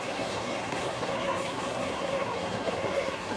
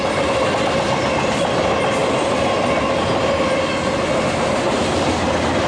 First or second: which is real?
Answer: second